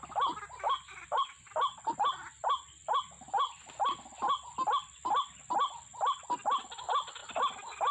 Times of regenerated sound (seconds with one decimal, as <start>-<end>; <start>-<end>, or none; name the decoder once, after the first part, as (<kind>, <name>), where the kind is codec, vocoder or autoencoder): none